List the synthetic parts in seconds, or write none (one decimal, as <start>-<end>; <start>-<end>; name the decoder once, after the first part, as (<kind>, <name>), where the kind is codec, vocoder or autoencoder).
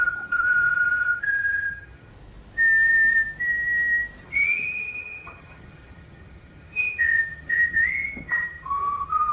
0.0-2.1 (vocoder, HiFi-GAN); 4.2-9.3